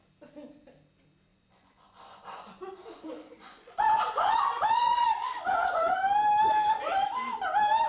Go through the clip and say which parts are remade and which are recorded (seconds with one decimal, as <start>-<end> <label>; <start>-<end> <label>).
0.0-1.3 recorded; 1.3-6.0 remade; 6.0-7.9 recorded